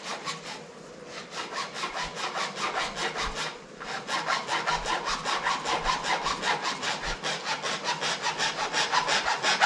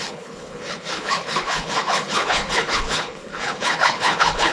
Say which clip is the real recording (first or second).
first